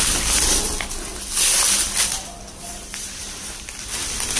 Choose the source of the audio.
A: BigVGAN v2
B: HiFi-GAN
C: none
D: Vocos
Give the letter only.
C